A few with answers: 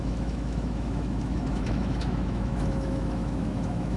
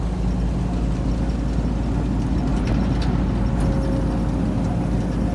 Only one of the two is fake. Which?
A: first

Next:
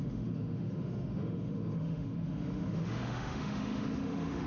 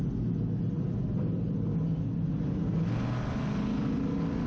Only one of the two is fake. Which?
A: first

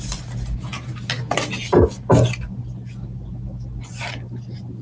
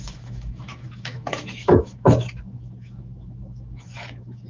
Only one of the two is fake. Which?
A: second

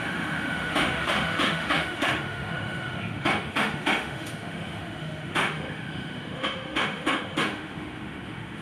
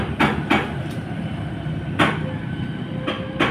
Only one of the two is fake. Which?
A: first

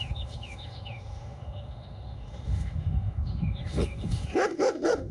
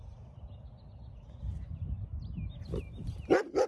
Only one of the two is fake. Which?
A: first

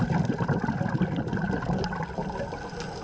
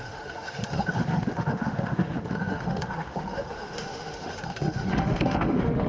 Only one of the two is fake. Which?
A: second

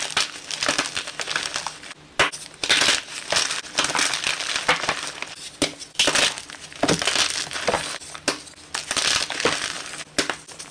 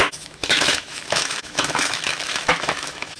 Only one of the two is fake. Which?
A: second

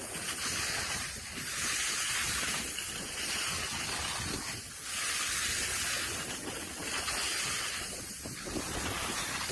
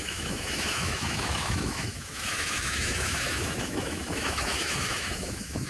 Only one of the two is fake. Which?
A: second